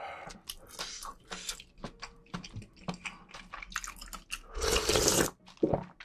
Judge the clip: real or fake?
real